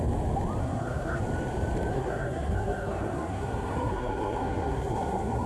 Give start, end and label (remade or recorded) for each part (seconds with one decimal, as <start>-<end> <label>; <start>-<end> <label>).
0.0-0.6 recorded; 0.6-1.2 remade; 1.2-1.9 recorded; 1.9-5.5 remade